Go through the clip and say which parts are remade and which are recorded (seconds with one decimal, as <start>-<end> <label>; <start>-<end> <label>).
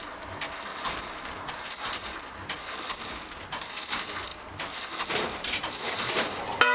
0.0-0.7 recorded; 0.7-1.5 remade; 1.5-6.7 recorded